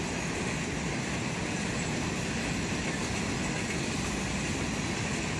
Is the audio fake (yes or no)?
no